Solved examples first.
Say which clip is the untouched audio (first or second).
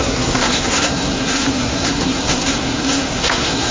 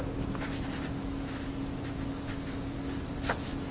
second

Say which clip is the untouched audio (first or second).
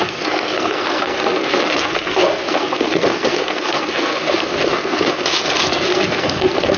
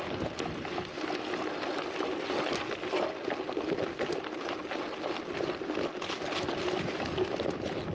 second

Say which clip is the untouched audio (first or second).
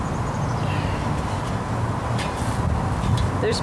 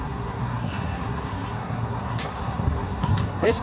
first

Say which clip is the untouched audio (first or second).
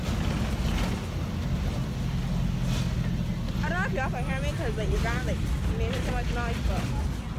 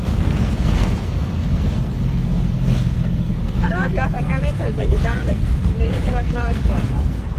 first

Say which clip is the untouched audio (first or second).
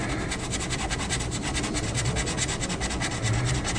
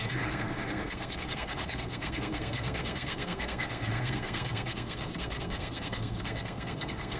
first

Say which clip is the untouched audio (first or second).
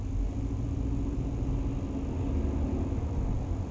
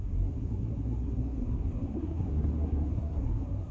first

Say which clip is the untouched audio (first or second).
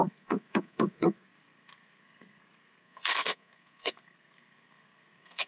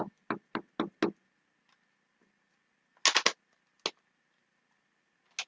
second